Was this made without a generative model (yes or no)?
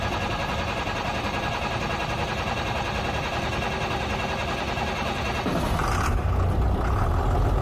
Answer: yes